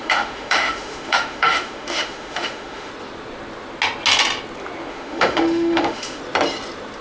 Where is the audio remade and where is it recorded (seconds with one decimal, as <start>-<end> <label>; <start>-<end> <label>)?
0.0-2.9 remade; 2.9-4.9 recorded; 4.9-6.2 remade; 6.2-7.0 recorded